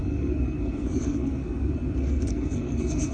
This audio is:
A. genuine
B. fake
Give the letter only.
B